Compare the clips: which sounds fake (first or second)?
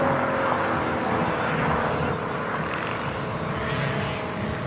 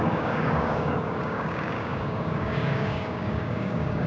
second